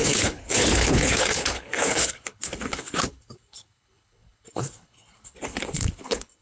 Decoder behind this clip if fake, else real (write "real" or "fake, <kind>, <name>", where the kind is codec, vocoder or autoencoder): fake, codec, HILCodec